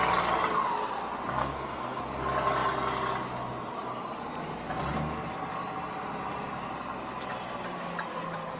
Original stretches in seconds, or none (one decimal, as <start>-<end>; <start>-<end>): 0.0-1.4; 2.0-8.6